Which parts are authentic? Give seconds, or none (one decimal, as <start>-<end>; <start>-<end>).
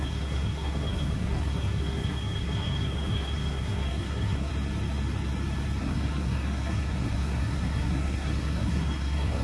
4.5-5.8